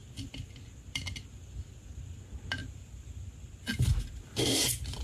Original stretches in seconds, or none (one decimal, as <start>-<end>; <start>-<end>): 0.0-2.6; 3.2-5.0